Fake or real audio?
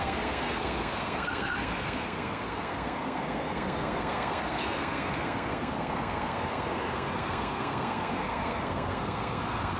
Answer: fake